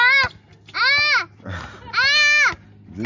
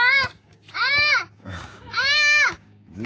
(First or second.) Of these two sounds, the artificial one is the second